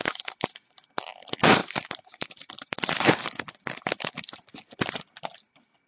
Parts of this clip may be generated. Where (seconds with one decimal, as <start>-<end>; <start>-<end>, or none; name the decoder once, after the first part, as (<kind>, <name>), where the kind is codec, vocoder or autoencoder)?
1.6-3.8 (vocoder, BigVGAN v2)